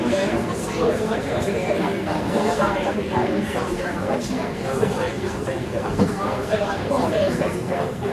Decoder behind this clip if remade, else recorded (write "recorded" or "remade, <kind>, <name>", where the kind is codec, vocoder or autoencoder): remade, codec, SNAC